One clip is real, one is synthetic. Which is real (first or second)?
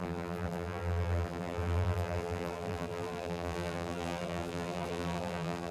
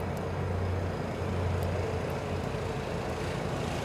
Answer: second